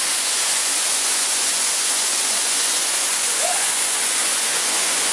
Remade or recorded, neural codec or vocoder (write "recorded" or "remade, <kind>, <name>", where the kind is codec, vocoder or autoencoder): remade, vocoder, Vocos